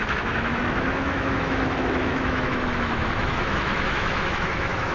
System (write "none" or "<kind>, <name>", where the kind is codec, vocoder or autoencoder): autoencoder, DAC-VAE